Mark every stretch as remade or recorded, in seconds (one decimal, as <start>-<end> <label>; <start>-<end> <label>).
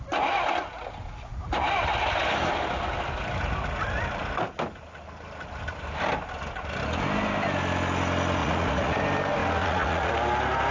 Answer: 0.0-8.4 recorded; 8.4-9.0 remade; 9.0-9.6 recorded; 9.6-10.1 remade; 10.1-10.7 recorded